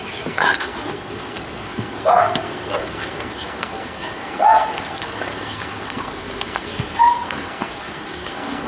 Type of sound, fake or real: fake